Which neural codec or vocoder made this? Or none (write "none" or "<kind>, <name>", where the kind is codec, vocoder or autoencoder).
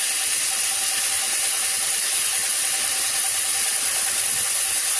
none